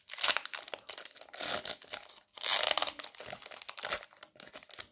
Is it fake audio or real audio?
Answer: real